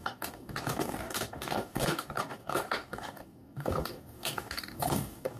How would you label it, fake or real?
fake